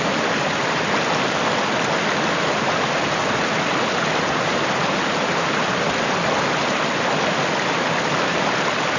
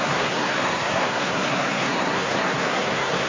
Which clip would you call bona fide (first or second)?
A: first